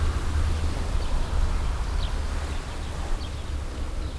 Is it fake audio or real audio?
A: real